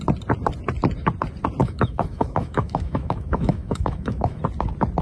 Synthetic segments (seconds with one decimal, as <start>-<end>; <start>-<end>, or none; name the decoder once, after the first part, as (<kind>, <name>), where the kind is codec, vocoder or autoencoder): 1.6-4.4 (autoencoder, DAC-VAE)